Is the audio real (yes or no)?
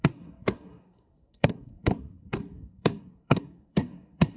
no